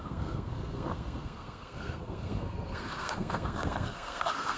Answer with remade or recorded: remade